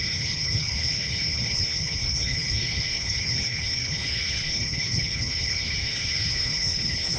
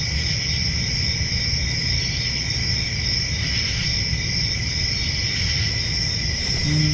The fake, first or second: first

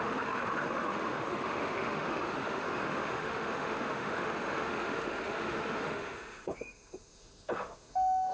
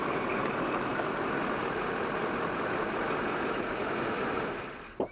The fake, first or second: first